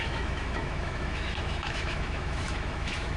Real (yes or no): no